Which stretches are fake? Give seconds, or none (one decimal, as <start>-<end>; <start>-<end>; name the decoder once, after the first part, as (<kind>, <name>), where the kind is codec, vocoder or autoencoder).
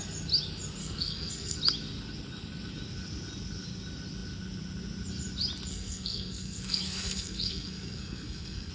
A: 0.8-1.6 (codec, SNAC); 5.7-8.7